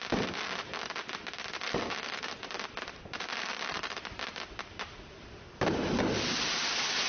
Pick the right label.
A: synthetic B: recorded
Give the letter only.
B